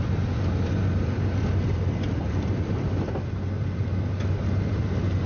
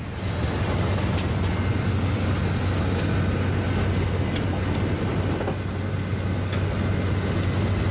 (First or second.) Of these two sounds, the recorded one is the second